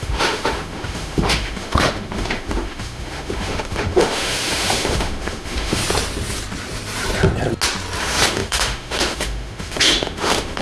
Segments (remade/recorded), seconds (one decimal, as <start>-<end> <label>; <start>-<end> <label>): 0.0-5.8 remade; 5.8-8.0 recorded; 8.0-10.6 remade